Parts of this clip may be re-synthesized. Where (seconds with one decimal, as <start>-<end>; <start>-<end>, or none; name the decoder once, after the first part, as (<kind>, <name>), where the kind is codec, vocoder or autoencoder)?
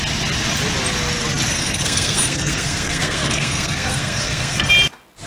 1.5-4.7 (codec, SNAC)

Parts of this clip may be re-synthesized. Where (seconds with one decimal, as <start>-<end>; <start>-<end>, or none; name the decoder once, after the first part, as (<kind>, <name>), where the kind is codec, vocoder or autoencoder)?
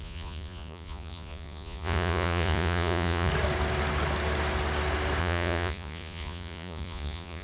0.0-3.3 (vocoder, Vocos); 5.2-7.4